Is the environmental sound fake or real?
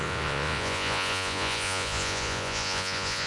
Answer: fake